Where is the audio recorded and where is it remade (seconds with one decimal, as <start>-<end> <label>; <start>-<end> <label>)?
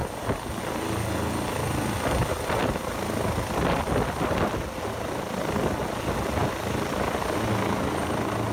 0.0-8.5 recorded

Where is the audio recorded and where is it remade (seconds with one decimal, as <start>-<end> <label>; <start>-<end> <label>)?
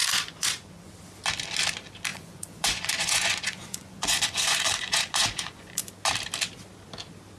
0.0-0.9 remade; 0.9-2.1 recorded; 2.1-5.9 remade; 5.9-7.4 recorded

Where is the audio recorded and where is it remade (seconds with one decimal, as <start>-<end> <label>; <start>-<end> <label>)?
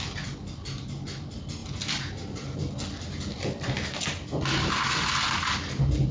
0.0-6.1 recorded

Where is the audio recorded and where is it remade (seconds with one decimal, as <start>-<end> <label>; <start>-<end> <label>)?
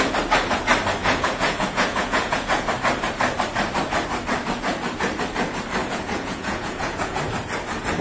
0.0-1.0 recorded; 1.0-2.7 remade; 2.7-5.8 recorded; 5.8-7.2 remade; 7.2-8.0 recorded